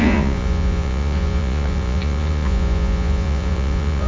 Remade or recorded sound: remade